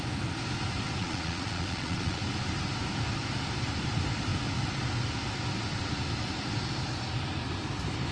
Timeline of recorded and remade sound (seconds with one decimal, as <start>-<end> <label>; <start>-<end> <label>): 0.0-1.0 recorded; 1.0-2.2 remade; 2.2-8.1 recorded